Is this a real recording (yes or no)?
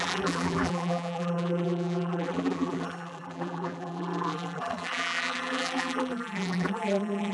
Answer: no